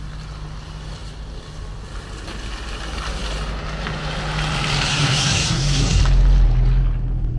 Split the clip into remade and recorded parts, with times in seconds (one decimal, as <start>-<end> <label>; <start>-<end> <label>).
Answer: 0.0-4.9 recorded; 4.9-6.0 remade; 6.0-7.4 recorded